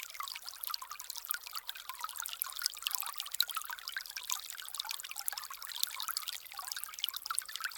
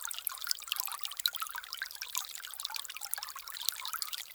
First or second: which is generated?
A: second